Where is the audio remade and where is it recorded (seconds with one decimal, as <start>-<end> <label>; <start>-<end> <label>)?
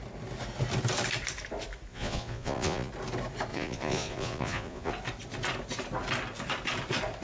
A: 0.0-1.9 recorded; 1.9-2.9 remade; 2.9-3.5 recorded; 3.5-4.9 remade; 4.9-7.2 recorded